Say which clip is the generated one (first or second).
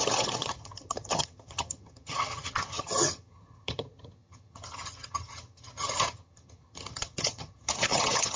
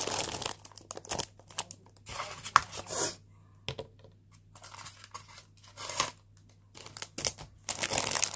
first